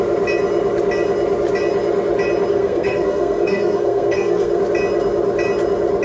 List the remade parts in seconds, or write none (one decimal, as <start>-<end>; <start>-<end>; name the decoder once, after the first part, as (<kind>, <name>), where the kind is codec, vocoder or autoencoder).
2.5-4.6 (codec, SNAC)

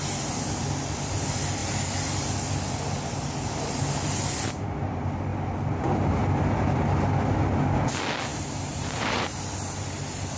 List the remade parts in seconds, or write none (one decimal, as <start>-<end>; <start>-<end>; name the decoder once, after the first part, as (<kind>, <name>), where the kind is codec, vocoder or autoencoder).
5.3-6.1 (vocoder, BigVGAN v2); 8.3-9.5

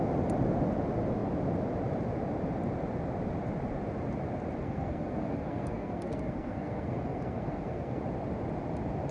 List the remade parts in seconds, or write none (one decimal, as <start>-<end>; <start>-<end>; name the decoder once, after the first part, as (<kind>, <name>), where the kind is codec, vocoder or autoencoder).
4.6-8.0 (codec, SNAC)

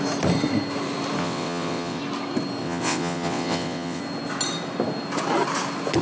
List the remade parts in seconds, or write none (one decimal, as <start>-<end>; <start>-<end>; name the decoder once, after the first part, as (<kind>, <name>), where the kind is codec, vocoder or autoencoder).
1.2-2.0 (vocoder, WaveNeXt); 2.6-4.0

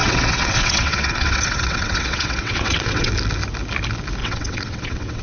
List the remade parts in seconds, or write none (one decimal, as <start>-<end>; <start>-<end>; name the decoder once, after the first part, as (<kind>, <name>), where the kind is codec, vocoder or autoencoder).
0.0-3.1 (vocoder, WaveNeXt); 4.2-5.2

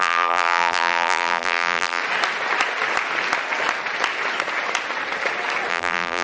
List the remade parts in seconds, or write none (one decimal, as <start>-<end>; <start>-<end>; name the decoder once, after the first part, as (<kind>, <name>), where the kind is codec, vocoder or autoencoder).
0.0-2.0 (vocoder, BigVGAN v2); 5.7-6.2